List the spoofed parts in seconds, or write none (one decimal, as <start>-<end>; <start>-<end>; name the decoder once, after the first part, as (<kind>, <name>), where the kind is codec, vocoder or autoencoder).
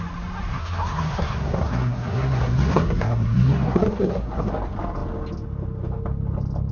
0.5-4.5 (codec, SNAC)